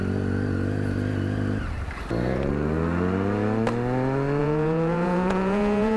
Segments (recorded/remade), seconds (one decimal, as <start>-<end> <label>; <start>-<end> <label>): 0.0-4.4 recorded; 4.4-6.0 remade